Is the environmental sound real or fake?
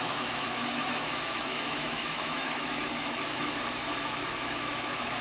fake